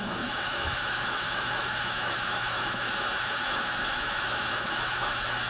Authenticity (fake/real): fake